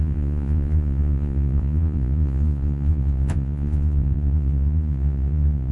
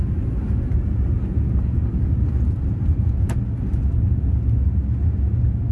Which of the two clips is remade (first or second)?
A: first